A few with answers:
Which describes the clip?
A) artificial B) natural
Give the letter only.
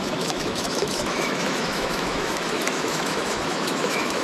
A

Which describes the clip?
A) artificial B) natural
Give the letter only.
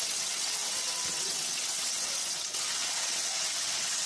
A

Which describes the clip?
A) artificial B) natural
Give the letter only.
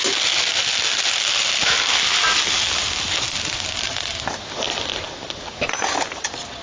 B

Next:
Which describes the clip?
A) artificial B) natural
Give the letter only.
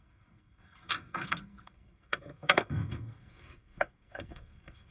A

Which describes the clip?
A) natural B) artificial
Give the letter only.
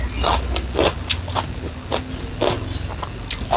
A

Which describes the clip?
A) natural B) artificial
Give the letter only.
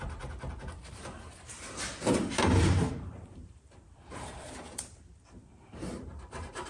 B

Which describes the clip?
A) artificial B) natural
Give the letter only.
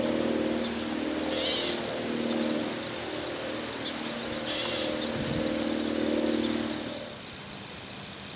B